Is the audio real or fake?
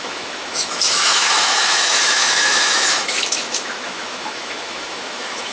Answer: fake